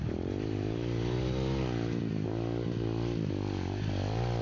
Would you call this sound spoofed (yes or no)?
no